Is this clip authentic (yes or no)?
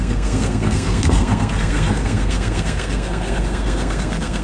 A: no